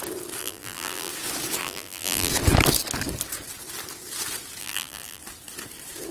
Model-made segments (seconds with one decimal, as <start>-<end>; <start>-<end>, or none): 0.4-1.1; 1.6-2.3; 4.6-5.2